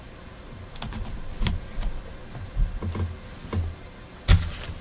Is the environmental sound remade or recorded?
recorded